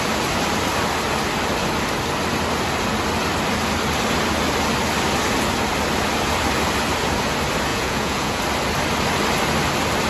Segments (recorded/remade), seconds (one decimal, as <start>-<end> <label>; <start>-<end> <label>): 0.0-7.7 recorded; 7.7-8.4 remade; 8.4-10.1 recorded